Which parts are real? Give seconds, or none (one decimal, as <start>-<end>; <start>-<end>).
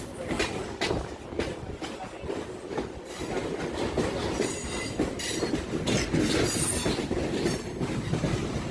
0.0-8.7